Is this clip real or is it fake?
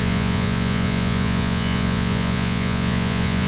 fake